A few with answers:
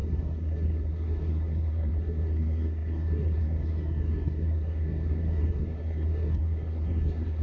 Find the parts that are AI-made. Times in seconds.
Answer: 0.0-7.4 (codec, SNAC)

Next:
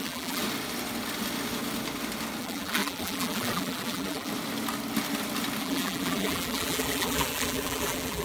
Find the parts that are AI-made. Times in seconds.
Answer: 0.0-0.4 (vocoder, BigVGAN v2); 2.4-4.3; 5.6-8.2

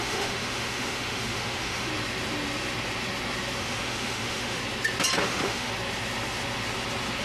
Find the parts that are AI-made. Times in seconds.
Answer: 0.0-1.9 (autoencoder, DAC-VAE); 3.6-4.6; 5.2-5.7

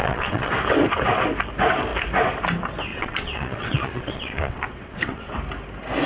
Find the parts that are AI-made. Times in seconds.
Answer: 0.0-0.5 (vocoder, WaveNeXt); 2.9-5.3

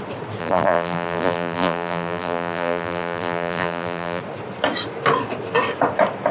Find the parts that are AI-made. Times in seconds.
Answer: 0.4-4.2 (vocoder, BigVGAN v2)

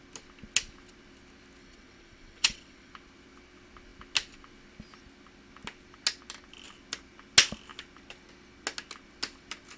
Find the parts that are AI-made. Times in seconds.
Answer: 1.6-2.9 (vocoder, WaveNeXt)

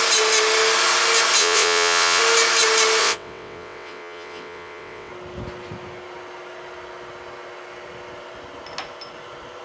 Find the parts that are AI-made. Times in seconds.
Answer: 1.4-2.2 (vocoder, WaveNeXt); 3.0-5.1